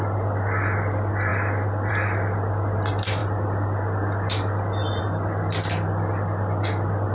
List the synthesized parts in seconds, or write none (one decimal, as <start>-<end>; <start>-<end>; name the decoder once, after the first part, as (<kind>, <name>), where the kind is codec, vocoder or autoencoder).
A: none